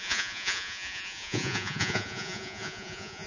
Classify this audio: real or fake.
fake